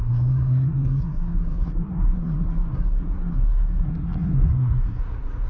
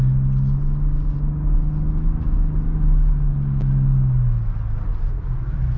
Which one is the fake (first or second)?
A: first